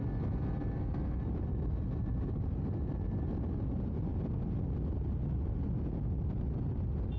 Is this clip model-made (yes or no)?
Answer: no